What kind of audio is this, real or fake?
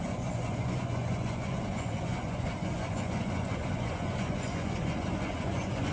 fake